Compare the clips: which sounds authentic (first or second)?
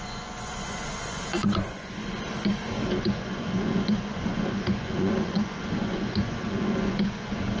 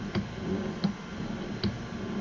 second